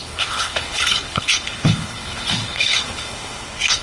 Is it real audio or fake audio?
fake